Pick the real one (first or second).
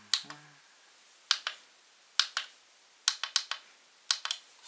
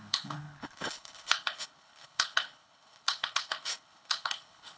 first